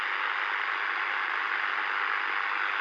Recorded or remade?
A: recorded